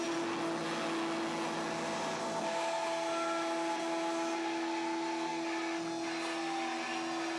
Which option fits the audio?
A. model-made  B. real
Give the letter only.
B